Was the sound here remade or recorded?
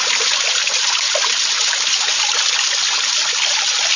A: recorded